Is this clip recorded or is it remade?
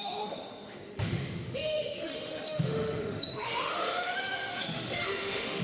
remade